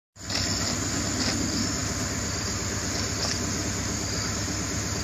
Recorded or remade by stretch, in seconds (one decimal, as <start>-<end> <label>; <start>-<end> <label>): 0.0-5.0 recorded